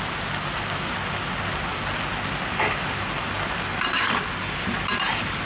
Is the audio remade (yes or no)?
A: no